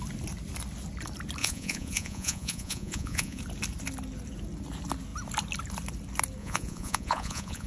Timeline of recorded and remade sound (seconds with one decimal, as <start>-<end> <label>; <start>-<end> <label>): 0.0-1.4 recorded; 1.4-3.4 remade; 3.4-6.4 recorded; 6.4-7.7 remade